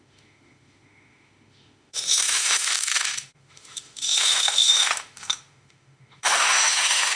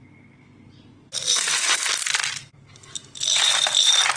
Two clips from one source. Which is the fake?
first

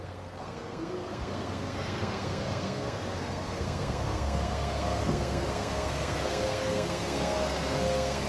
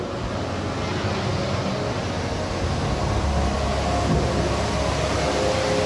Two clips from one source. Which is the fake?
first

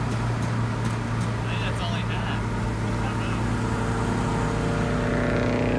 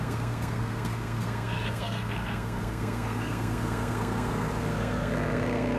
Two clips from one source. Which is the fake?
second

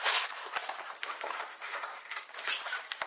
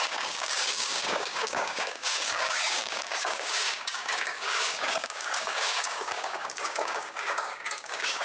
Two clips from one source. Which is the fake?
second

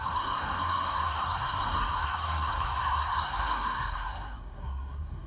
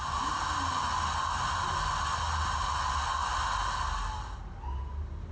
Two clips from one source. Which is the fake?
first